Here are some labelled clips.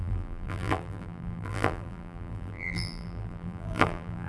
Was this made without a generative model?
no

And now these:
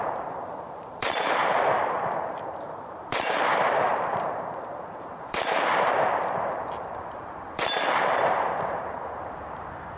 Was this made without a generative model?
no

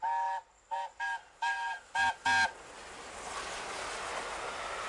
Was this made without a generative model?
yes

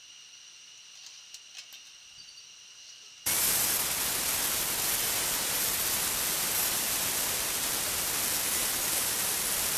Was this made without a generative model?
yes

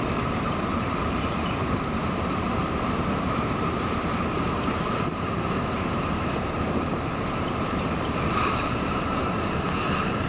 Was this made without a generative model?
no